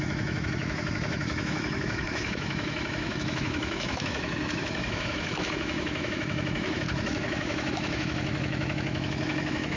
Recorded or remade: remade